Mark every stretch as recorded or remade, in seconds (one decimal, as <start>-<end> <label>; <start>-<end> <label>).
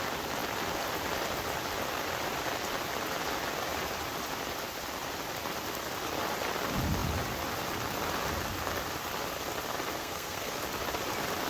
0.0-10.0 recorded; 10.0-10.6 remade; 10.6-11.5 recorded